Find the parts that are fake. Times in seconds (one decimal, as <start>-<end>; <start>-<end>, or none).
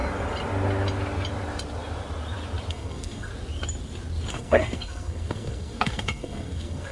2.7-3.3; 4.3-6.9